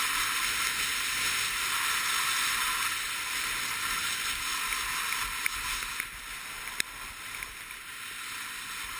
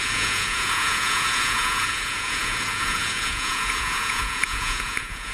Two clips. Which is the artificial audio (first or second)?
second